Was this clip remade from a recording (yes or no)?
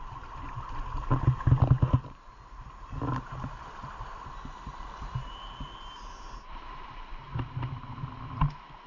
no